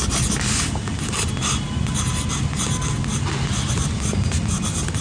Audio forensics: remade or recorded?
recorded